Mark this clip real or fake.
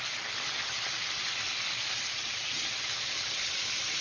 real